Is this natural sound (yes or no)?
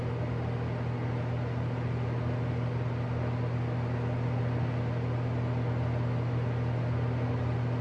yes